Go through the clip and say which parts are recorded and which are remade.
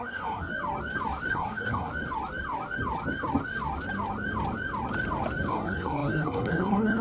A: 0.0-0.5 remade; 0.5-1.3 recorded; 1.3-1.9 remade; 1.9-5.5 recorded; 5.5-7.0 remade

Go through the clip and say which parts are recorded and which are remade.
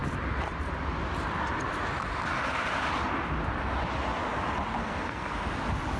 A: 0.0-4.8 recorded; 4.8-5.3 remade; 5.3-6.0 recorded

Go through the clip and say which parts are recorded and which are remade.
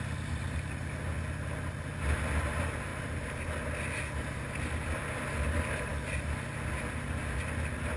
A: 0.0-8.0 recorded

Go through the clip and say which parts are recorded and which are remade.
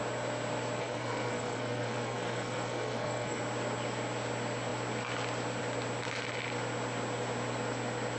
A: 0.0-0.8 recorded; 0.8-3.4 remade; 3.4-8.2 recorded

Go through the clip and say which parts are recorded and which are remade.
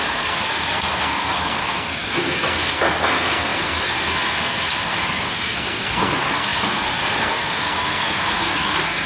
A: 0.0-9.1 remade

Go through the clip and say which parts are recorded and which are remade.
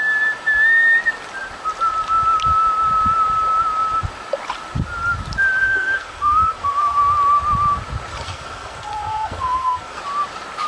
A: 0.0-5.6 recorded; 5.6-7.0 remade; 7.0-8.1 recorded; 8.1-10.0 remade; 10.0-10.7 recorded